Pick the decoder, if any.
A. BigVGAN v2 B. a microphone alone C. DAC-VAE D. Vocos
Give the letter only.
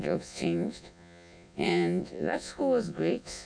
D